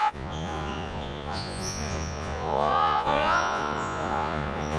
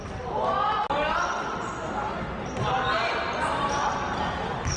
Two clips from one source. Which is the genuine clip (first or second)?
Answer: second